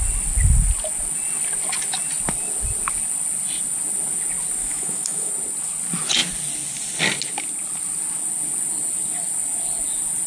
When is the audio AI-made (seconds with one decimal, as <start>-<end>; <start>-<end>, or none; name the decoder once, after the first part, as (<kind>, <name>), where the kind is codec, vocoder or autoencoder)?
4.6-5.3 (autoencoder, DAC-VAE)